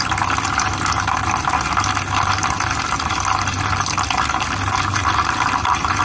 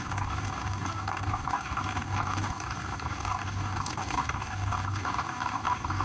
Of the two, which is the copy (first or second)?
second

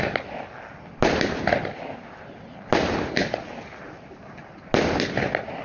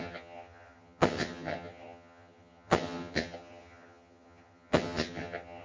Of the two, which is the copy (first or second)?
second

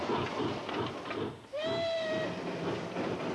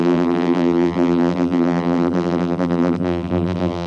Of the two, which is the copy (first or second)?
second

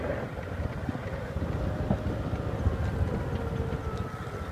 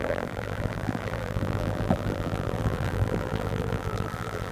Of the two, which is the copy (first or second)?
second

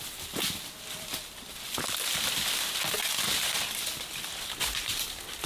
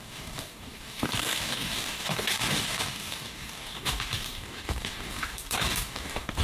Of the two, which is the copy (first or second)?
second